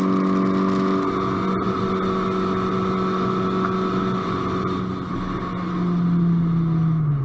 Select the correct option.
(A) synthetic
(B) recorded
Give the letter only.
B